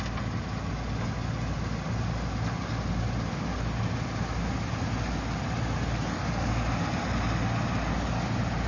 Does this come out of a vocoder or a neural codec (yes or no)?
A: no